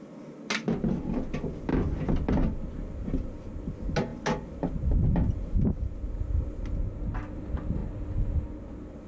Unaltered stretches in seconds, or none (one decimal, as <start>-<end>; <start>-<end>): 0.0-9.1